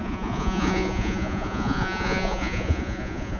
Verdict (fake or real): fake